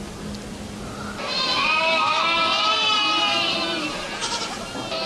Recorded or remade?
recorded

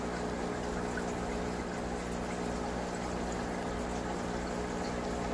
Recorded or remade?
recorded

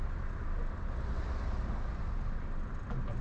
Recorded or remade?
recorded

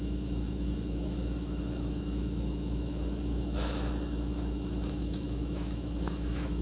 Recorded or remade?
remade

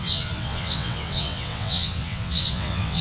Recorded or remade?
remade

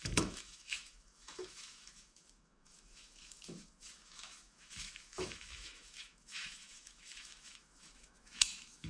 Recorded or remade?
remade